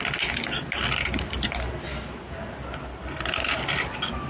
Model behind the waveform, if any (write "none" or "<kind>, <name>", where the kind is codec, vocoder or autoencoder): none